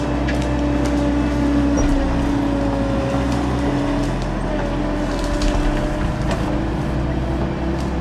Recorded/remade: recorded